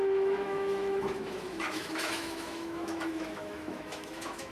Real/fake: fake